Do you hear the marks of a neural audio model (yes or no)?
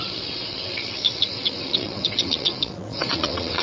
yes